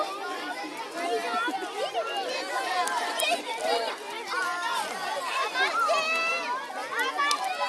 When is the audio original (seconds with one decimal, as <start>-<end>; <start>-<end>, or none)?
0.0-7.7